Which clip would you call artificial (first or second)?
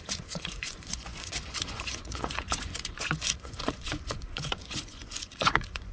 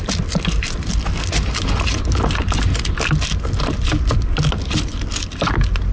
first